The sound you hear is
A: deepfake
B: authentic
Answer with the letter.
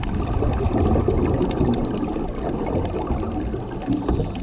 B